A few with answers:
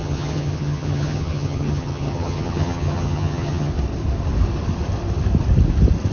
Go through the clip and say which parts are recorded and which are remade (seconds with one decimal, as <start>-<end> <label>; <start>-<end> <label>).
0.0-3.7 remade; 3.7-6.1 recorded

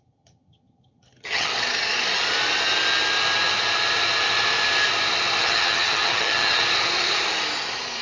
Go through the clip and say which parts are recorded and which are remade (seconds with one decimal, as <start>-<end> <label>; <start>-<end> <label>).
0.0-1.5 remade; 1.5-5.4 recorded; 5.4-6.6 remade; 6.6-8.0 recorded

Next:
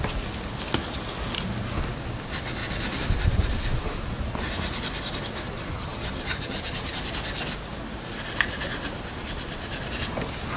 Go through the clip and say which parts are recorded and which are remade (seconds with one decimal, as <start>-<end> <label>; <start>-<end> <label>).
0.0-5.7 recorded; 5.7-6.9 remade; 6.9-10.6 recorded

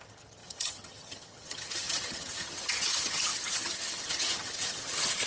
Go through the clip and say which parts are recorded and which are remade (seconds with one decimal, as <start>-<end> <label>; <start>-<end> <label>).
0.0-5.3 remade

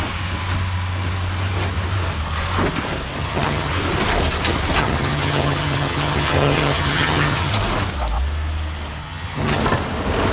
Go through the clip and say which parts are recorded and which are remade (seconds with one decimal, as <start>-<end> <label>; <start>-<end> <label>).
0.0-3.2 recorded; 3.2-3.7 remade; 3.7-4.8 recorded; 4.8-7.5 remade; 7.5-9.0 recorded; 9.0-9.6 remade; 9.6-10.3 recorded